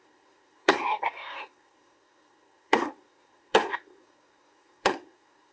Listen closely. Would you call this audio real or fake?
fake